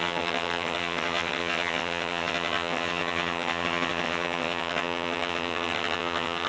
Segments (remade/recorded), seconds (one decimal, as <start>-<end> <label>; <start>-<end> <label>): 0.0-6.5 remade